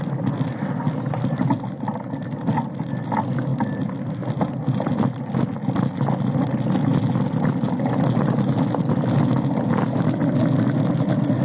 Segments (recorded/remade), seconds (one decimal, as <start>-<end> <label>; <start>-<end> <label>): 0.0-11.4 recorded